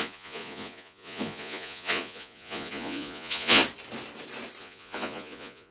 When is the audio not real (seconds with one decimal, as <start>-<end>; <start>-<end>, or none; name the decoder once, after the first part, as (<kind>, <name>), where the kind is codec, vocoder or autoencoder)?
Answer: 0.0-3.6 (vocoder, Vocos); 4.6-5.7